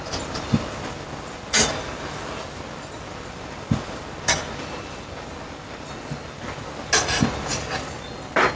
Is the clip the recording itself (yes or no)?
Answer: yes